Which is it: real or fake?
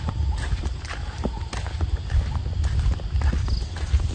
real